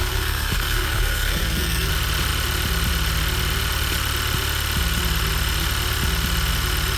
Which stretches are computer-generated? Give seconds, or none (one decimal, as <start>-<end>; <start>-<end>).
0.0-1.9

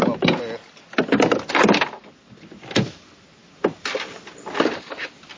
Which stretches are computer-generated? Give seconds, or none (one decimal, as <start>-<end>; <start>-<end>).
none

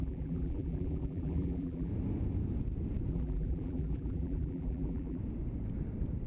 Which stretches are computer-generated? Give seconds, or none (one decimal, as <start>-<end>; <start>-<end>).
0.0-1.9; 3.1-5.2

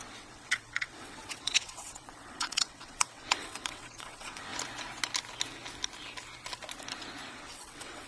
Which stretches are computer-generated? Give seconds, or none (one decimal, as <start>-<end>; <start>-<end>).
0.0-4.5; 7.3-8.1

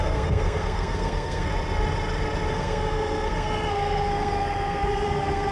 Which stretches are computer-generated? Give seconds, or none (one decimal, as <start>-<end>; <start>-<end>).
0.0-1.5; 2.5-5.5

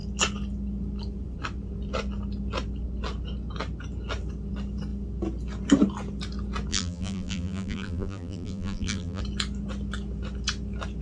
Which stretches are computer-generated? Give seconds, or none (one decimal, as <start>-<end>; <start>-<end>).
6.7-9.2

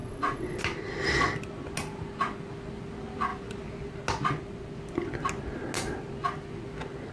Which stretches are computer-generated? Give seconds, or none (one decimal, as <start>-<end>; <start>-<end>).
0.0-0.6

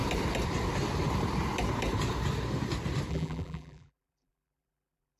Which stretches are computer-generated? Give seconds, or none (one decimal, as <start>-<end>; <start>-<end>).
3.1-5.2